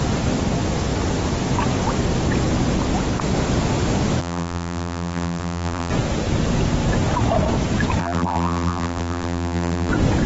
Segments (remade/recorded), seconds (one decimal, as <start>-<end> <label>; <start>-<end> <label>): 0.0-4.2 recorded; 4.2-5.9 remade; 5.9-8.0 recorded; 8.0-9.9 remade; 9.9-10.3 recorded